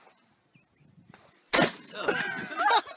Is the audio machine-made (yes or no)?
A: no